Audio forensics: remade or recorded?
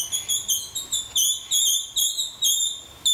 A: recorded